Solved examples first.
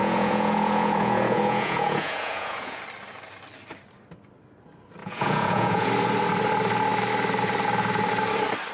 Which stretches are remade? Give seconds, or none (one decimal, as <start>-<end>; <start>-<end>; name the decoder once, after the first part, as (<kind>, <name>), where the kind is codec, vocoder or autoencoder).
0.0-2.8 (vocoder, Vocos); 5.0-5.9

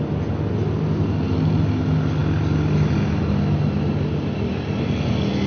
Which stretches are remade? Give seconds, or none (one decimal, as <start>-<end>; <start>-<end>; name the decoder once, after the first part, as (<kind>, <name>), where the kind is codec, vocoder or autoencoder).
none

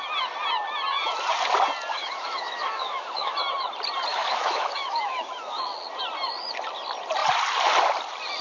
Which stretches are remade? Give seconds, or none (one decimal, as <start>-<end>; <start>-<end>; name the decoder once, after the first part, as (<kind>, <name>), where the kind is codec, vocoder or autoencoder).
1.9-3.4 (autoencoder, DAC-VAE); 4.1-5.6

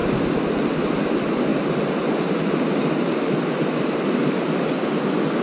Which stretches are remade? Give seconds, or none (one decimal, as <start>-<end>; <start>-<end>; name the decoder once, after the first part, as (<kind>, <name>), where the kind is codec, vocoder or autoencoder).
0.0-0.8 (vocoder, BigVGAN v2)